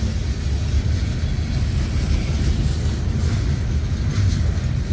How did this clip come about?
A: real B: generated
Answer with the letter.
A